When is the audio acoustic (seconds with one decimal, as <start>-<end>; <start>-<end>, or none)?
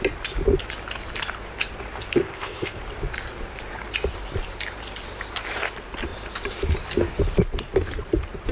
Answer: 0.0-2.2; 2.8-8.5